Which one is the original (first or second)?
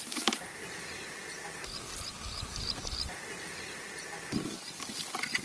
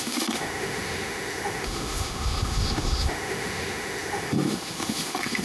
first